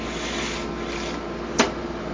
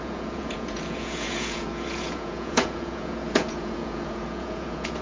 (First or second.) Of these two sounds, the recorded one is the first